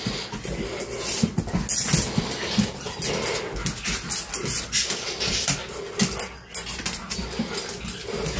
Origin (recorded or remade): recorded